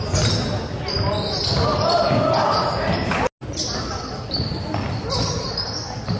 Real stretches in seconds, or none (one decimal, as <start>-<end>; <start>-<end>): 0.0-6.2